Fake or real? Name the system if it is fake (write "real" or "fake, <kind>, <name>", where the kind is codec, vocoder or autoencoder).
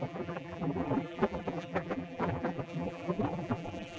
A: fake, vocoder, BigVGAN v2